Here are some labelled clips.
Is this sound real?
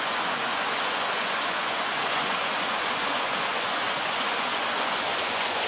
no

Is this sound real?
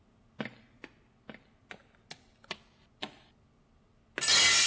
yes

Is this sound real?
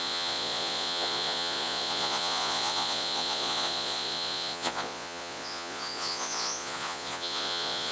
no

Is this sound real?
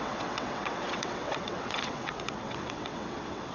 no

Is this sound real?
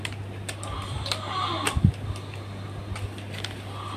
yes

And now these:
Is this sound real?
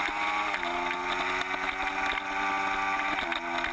yes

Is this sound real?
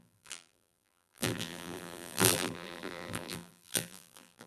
no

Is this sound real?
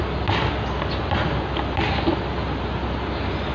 yes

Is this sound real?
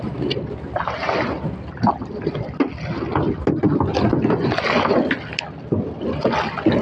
yes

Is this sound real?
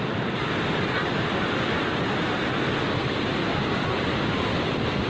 yes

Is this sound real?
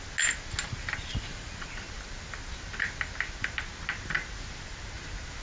yes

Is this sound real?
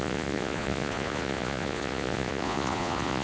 no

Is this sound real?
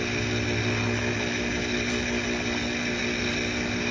yes